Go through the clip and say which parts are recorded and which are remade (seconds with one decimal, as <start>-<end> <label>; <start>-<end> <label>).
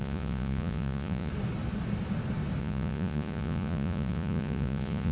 0.0-1.3 remade; 1.3-2.6 recorded; 2.6-5.1 remade